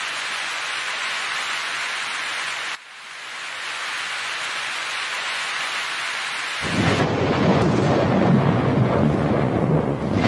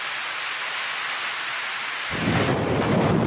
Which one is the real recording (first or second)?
second